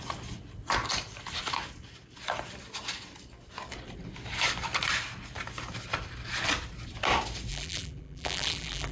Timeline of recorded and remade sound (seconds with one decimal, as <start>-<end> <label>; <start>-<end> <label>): 0.0-7.5 recorded; 7.5-8.9 remade